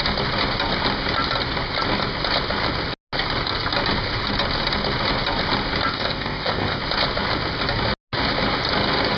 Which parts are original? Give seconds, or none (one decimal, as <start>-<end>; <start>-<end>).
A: 0.0-5.9; 6.8-9.2